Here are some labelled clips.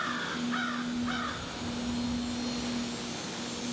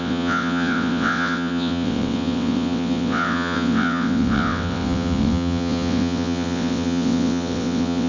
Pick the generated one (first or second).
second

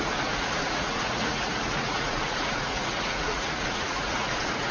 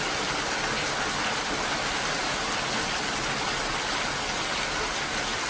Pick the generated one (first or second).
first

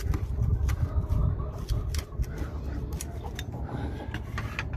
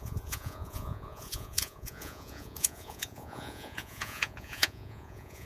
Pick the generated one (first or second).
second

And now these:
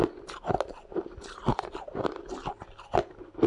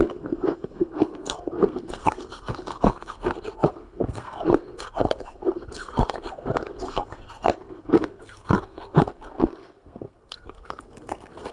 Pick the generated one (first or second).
second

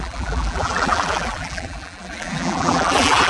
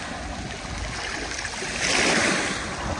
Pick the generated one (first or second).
first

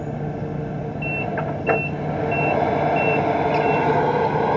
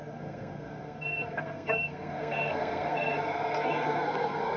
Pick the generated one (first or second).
second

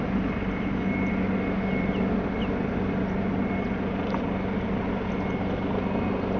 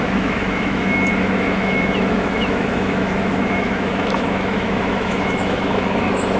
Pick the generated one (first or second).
second